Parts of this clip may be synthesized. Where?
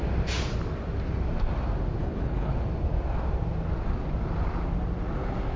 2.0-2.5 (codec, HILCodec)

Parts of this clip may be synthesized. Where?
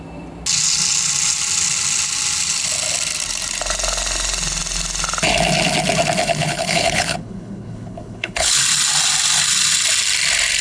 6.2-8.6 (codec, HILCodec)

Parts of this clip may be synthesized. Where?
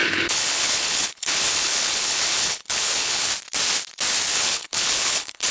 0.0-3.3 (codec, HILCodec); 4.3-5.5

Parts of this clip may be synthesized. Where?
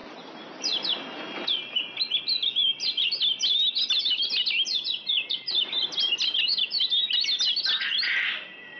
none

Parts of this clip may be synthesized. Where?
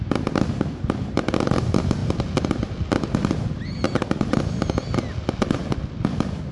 none